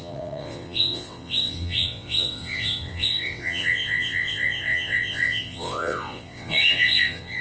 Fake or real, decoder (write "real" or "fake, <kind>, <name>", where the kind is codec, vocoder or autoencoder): fake, vocoder, WaveNeXt